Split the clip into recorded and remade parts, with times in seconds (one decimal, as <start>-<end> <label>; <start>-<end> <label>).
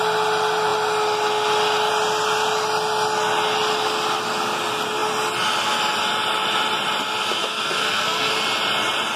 0.0-7.4 recorded; 7.4-8.3 remade; 8.3-9.2 recorded